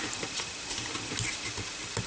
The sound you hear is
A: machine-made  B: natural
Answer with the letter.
B